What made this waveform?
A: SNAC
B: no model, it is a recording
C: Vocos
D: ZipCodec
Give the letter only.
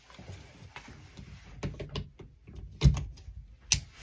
B